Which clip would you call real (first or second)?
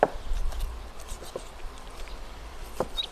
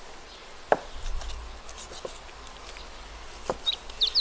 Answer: second